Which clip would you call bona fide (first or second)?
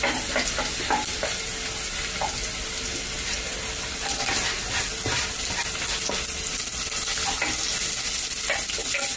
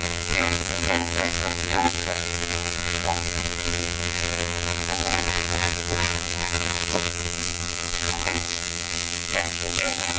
first